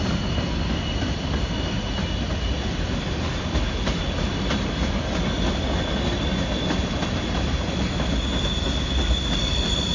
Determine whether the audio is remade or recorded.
recorded